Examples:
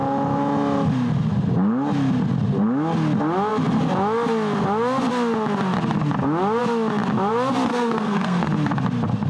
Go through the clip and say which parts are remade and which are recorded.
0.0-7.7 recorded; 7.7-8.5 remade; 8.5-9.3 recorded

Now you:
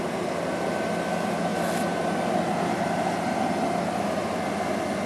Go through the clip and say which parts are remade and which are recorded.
0.0-5.1 recorded

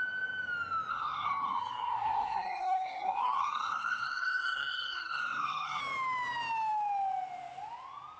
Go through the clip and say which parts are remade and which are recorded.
0.0-0.9 recorded; 0.9-5.8 remade; 5.8-8.2 recorded

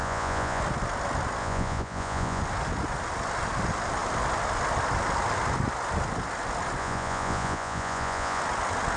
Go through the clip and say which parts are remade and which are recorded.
0.0-0.6 remade; 0.6-1.4 recorded; 1.4-2.4 remade; 2.4-6.8 recorded; 6.8-8.4 remade; 8.4-9.0 recorded

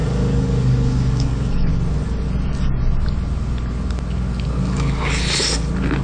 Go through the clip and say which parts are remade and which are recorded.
0.0-1.7 remade; 1.7-4.6 recorded; 4.6-5.1 remade; 5.1-6.0 recorded